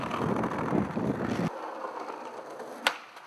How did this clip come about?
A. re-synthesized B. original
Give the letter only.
B